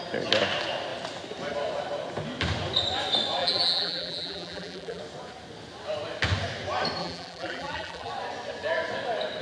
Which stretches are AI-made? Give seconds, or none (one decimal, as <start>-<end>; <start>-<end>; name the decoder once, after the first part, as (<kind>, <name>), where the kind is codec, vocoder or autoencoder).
3.4-5.0 (vocoder, BigVGAN v2); 7.0-8.1